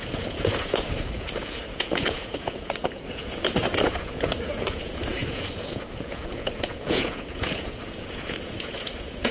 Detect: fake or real fake